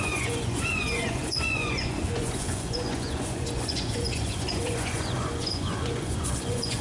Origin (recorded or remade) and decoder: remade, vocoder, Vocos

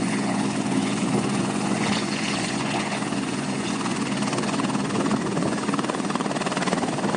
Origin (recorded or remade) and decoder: remade, vocoder, Vocos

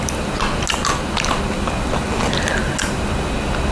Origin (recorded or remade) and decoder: recorded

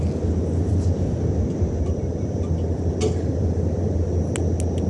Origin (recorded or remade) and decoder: recorded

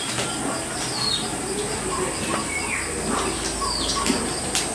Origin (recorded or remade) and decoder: recorded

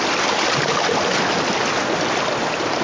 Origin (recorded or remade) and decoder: recorded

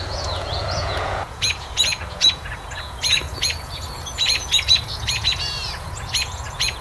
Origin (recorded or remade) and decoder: remade, vocoder, Vocos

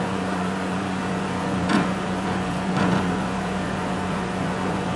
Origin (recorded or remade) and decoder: remade, vocoder, Vocos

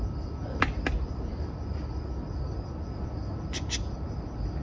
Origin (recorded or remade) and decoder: recorded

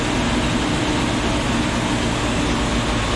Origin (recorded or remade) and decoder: recorded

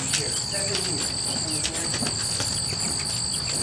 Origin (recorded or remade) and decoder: recorded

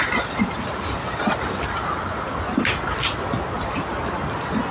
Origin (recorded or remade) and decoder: recorded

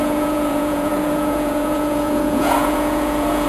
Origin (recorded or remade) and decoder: remade, vocoder, Vocos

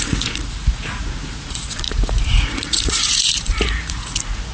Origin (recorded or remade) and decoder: remade, vocoder, Vocos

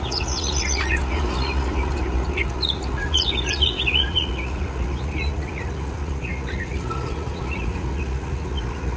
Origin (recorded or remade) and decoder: remade, vocoder, Vocos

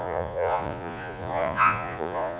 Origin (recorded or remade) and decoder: remade, vocoder, Vocos